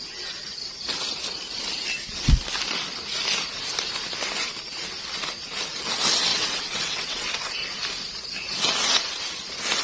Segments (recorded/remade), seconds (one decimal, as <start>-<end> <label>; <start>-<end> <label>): 0.0-6.3 recorded; 6.3-7.5 remade; 7.5-9.8 recorded

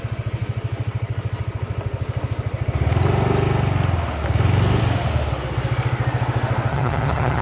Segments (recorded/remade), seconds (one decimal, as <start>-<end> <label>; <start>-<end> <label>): 0.0-6.7 recorded; 6.7-7.4 remade

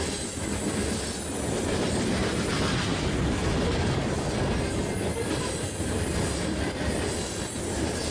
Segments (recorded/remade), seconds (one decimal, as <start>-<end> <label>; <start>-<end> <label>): 0.0-8.1 recorded

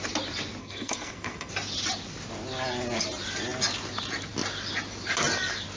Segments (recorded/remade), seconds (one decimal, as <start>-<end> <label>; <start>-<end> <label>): 0.0-0.6 recorded; 0.6-1.5 remade; 1.5-5.8 recorded

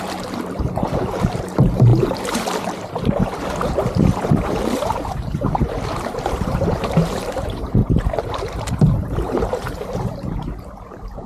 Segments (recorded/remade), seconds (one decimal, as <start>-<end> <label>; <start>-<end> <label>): 0.0-11.3 remade

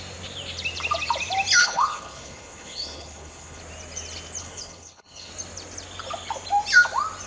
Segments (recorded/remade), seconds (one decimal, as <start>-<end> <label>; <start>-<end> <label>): 0.0-1.6 recorded; 1.6-3.6 remade; 3.6-4.4 recorded; 4.4-5.3 remade; 5.3-7.3 recorded